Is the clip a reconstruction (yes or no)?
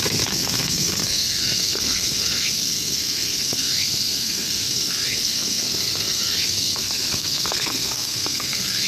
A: yes